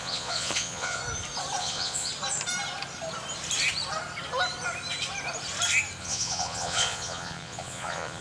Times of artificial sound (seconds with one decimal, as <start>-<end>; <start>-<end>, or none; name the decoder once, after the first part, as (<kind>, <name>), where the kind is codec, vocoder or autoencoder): 0.0-1.0 (vocoder, Vocos); 1.6-2.1; 6.0-8.2